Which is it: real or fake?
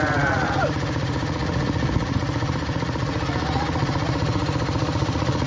fake